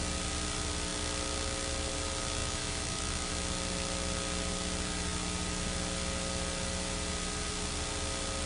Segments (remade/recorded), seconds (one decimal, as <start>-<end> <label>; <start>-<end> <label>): 0.0-2.4 recorded; 2.4-3.3 remade; 3.3-8.5 recorded